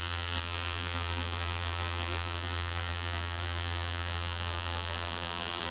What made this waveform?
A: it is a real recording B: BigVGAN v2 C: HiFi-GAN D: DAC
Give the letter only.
B